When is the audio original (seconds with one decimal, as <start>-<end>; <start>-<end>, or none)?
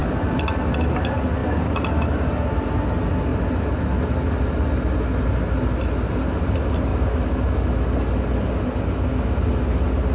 0.0-10.1